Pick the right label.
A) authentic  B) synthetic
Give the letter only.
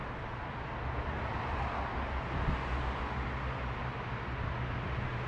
A